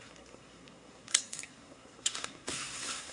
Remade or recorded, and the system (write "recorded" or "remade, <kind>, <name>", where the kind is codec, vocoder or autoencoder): remade, codec, SNAC